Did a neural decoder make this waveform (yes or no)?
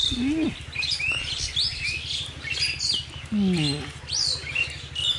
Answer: no